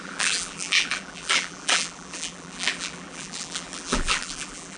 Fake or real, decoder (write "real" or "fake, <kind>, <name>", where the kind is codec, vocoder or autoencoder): fake, vocoder, BigVGAN v2